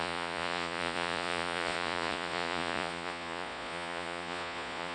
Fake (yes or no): yes